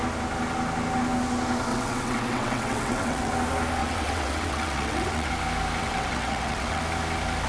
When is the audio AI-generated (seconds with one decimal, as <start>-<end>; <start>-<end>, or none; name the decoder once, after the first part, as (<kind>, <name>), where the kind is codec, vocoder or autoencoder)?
1.7-3.3 (vocoder, WaveNeXt); 3.8-5.3; 5.8-6.8